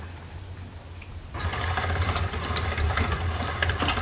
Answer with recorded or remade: recorded